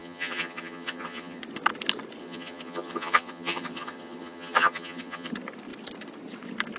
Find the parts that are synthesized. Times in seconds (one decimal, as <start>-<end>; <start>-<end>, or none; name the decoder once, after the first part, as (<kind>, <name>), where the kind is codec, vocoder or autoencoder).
0.0-1.4 (vocoder, HiFi-GAN); 2.2-5.3